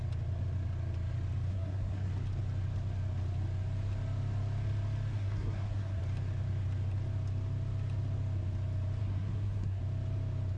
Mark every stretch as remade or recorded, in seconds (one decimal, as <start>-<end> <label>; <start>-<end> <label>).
0.0-1.5 recorded; 1.5-2.1 remade; 2.1-5.1 recorded; 5.1-6.0 remade; 6.0-9.0 recorded; 9.0-9.8 remade; 9.8-10.6 recorded

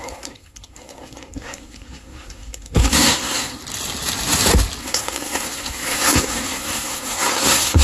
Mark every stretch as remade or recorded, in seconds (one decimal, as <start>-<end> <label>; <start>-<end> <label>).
0.0-3.6 remade; 3.6-4.8 recorded; 4.8-7.8 remade

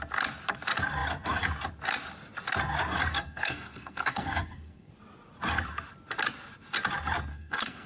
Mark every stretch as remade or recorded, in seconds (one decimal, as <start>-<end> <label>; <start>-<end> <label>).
0.0-3.1 recorded; 3.1-4.9 remade; 4.9-7.3 recorded; 7.3-7.9 remade

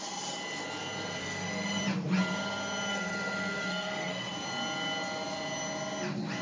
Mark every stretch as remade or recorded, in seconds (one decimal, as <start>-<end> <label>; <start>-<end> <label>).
0.0-1.2 recorded; 1.2-1.8 remade; 1.8-2.9 recorded; 2.9-4.3 remade; 4.3-6.4 recorded

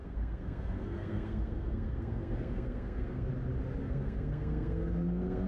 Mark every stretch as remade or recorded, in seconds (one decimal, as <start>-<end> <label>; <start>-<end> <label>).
0.0-3.3 remade; 3.3-3.8 recorded; 3.8-5.5 remade